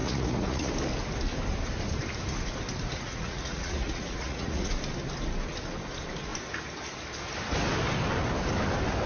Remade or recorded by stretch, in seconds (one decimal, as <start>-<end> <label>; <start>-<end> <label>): 0.0-0.7 remade; 0.7-2.9 recorded; 2.9-4.7 remade; 4.7-9.1 recorded